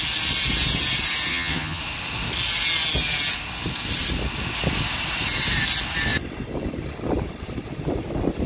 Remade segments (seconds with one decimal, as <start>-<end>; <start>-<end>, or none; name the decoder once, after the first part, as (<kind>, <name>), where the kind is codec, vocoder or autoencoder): 1.3-1.8 (vocoder, HiFi-GAN)